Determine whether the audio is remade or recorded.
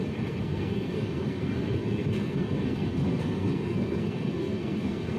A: remade